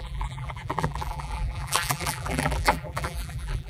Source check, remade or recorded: remade